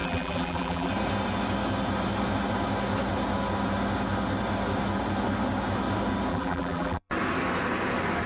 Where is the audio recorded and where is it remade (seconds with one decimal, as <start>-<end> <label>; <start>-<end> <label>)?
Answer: 0.0-0.9 remade; 0.9-6.3 recorded; 6.3-7.1 remade; 7.1-8.3 recorded

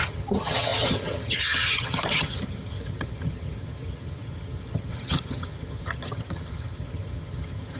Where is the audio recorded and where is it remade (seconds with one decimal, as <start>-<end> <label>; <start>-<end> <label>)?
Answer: 0.0-7.8 remade

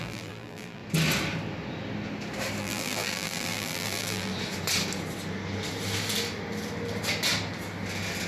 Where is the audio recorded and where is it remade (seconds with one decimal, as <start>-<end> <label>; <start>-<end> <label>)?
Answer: 0.0-0.8 remade; 0.8-2.6 recorded; 2.6-4.3 remade; 4.3-8.3 recorded

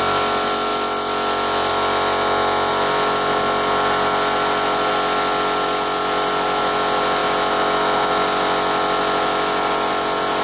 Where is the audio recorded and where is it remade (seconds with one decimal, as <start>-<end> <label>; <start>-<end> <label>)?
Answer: 0.0-0.7 recorded; 0.7-1.7 remade; 1.7-2.7 recorded; 2.7-4.9 remade; 4.9-10.4 recorded

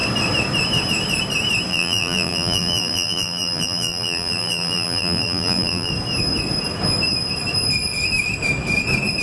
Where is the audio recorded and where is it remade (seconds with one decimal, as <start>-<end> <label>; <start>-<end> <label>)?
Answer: 0.0-1.7 recorded; 1.7-5.9 remade; 5.9-9.2 recorded